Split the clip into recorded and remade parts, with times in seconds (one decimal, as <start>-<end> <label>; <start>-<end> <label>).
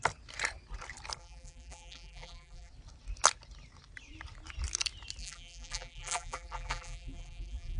0.0-1.2 recorded; 1.2-2.7 remade; 2.7-5.2 recorded; 5.2-7.8 remade